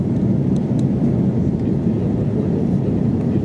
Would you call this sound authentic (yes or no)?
yes